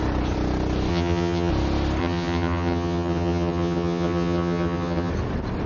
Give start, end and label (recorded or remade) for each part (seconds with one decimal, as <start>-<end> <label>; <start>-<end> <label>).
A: 0.0-0.9 recorded; 0.9-1.5 remade; 1.5-2.0 recorded; 2.0-5.1 remade; 5.1-5.7 recorded